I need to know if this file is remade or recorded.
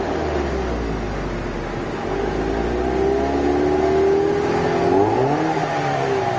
recorded